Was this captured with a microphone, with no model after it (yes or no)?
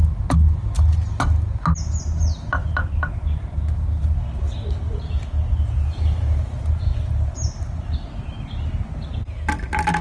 yes